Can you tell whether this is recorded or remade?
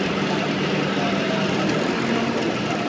recorded